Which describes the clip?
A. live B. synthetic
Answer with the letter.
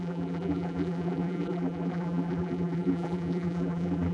B